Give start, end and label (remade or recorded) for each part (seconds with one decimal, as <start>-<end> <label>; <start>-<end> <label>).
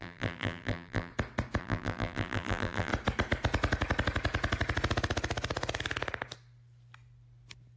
0.0-1.1 remade; 1.1-1.6 recorded; 1.6-2.9 remade; 2.9-7.8 recorded